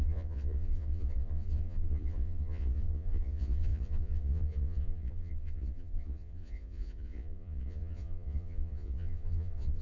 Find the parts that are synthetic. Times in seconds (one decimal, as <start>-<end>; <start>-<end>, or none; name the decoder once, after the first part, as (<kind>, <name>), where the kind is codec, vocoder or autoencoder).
0.0-9.8 (vocoder, Vocos)